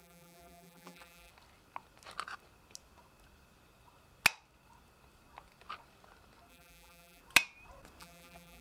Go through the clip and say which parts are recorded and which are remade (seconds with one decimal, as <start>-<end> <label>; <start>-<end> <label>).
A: 0.0-1.3 remade; 1.3-6.5 recorded; 6.5-7.2 remade; 7.2-8.0 recorded; 8.0-8.6 remade

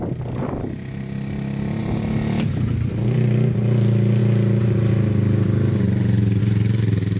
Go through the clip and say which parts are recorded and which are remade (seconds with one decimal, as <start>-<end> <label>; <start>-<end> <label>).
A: 0.0-7.2 recorded

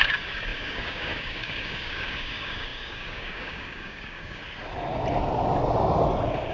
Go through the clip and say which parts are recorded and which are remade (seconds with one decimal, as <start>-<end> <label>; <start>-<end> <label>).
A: 0.0-4.4 remade; 4.4-6.5 recorded

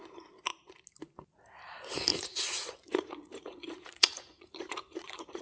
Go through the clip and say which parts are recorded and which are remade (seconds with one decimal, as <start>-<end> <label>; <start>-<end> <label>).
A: 0.0-2.1 recorded; 2.1-5.4 remade

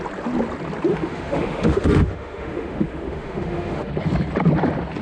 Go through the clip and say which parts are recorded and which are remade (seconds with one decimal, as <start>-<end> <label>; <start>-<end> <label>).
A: 0.0-0.9 recorded; 0.9-3.9 remade; 3.9-5.0 recorded

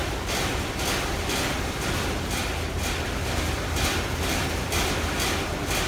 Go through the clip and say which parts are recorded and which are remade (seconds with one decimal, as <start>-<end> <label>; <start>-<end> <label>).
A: 0.0-5.9 recorded